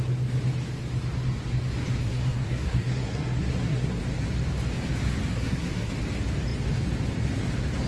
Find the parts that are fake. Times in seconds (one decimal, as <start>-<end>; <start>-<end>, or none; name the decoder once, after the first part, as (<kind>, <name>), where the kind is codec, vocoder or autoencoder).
2.0-4.0 (codec, SNAC); 5.3-5.9